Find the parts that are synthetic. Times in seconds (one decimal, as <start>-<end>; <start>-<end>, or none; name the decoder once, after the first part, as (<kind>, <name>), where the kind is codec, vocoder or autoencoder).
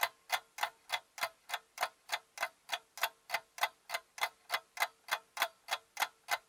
none